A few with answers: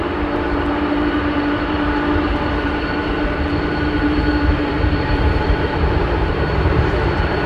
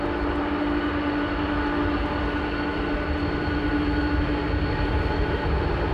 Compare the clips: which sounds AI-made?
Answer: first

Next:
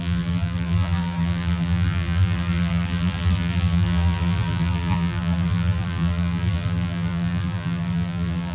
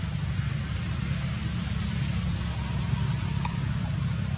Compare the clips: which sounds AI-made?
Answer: first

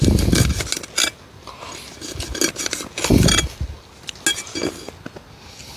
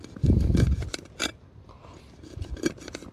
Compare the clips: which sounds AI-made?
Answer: second